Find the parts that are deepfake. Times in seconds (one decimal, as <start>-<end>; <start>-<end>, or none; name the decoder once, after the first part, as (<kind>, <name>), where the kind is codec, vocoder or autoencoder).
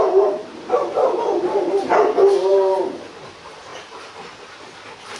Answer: 0.4-1.9 (vocoder, BigVGAN v2); 2.5-3.1; 3.7-4.4